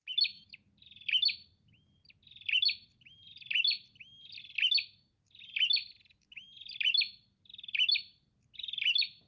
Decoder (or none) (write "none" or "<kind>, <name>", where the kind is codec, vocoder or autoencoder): none